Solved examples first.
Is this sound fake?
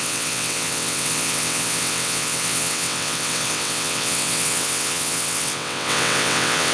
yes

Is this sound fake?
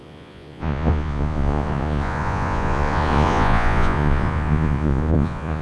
yes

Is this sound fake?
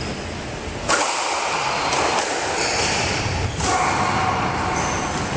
no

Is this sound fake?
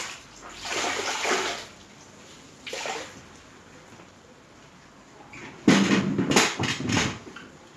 no